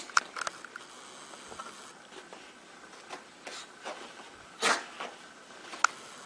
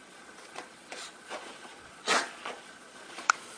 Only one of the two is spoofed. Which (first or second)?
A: second